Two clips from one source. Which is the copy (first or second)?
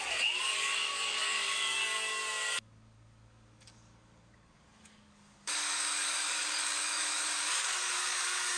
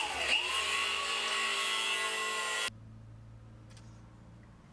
first